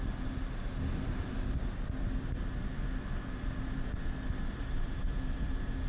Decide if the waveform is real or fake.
real